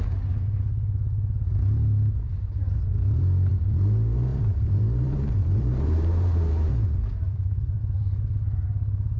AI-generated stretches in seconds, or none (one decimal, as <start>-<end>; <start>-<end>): 4.3-7.8